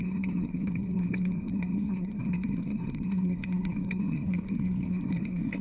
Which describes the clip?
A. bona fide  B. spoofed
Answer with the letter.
B